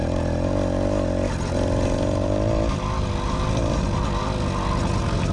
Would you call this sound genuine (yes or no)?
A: yes